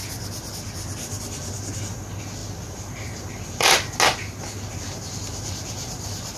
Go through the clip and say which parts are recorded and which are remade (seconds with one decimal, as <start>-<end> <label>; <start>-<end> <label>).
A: 0.0-6.4 recorded